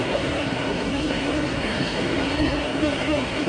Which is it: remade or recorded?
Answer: remade